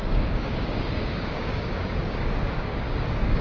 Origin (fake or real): fake